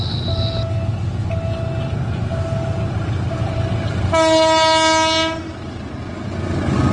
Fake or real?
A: real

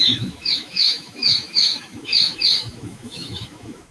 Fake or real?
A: fake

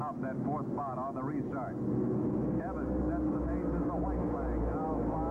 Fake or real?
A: real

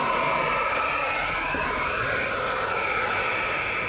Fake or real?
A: real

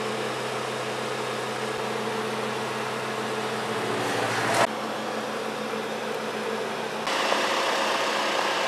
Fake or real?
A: real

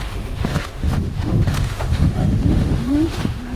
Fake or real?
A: fake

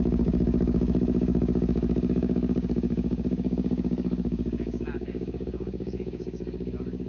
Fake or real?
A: fake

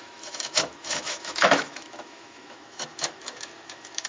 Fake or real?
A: fake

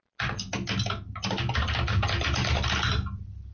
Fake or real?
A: real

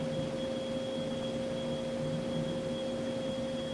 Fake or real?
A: real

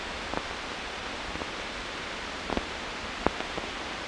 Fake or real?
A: real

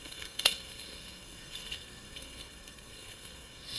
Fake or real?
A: fake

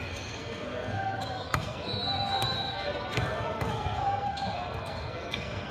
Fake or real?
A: fake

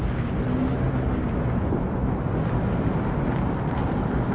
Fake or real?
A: real